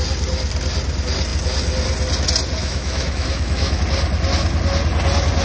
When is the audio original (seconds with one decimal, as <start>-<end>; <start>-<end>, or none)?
0.0-2.6; 3.8-5.4